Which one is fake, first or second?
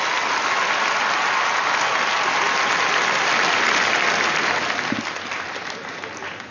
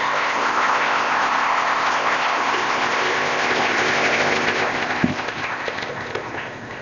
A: second